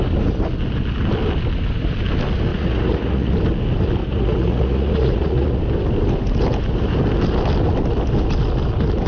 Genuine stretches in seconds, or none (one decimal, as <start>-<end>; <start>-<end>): 0.0-2.5; 3.3-4.0; 5.6-9.1